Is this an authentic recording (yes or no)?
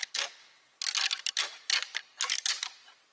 yes